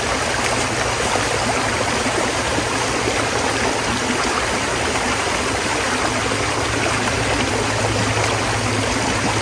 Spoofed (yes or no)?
no